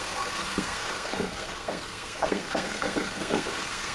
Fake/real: fake